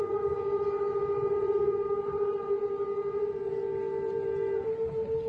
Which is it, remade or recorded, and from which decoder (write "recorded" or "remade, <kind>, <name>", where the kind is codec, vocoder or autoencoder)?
remade, vocoder, BigVGAN v2